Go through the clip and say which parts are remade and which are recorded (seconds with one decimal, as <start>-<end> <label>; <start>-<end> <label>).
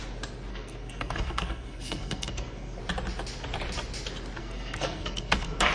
0.0-0.5 recorded; 0.5-2.8 remade; 2.8-4.4 recorded; 4.4-5.7 remade